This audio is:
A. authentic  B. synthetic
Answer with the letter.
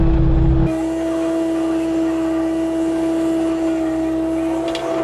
A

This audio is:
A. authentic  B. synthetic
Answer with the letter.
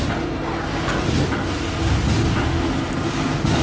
A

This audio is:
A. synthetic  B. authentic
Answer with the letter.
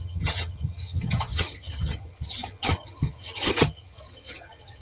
A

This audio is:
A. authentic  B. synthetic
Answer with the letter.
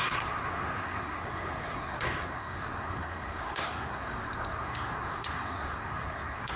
B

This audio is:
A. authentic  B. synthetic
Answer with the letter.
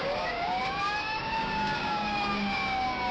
B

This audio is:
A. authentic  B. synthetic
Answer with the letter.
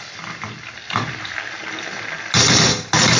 A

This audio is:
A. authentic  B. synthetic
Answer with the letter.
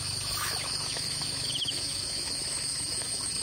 B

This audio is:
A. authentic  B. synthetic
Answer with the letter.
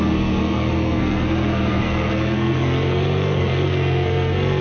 B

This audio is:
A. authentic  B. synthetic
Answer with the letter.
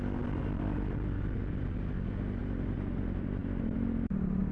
A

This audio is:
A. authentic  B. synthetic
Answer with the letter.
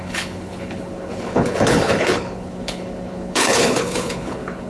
B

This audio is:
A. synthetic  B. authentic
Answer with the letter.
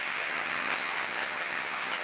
A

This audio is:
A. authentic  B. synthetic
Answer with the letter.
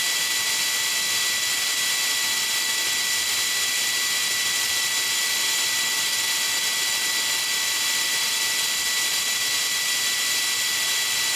A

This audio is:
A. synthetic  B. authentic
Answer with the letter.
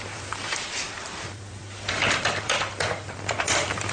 A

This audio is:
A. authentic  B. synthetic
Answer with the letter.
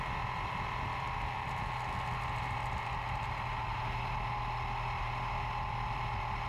A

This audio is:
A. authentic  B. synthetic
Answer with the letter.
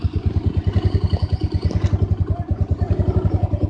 A